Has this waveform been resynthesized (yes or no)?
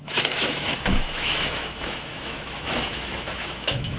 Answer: yes